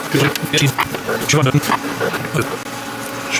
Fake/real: real